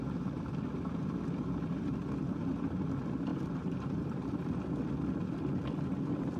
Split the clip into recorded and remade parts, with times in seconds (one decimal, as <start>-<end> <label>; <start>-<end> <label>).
0.0-3.3 recorded; 3.3-4.3 remade; 4.3-6.4 recorded